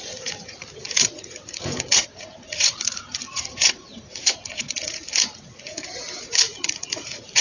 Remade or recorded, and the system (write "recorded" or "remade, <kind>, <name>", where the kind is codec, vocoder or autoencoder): remade, vocoder, Vocos